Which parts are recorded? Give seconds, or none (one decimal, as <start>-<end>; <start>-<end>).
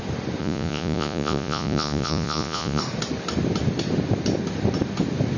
0.0-0.4; 2.8-5.4